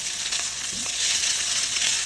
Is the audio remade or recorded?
remade